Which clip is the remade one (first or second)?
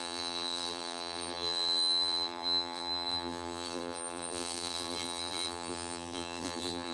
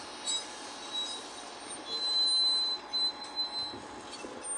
first